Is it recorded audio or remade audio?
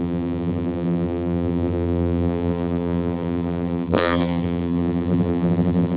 remade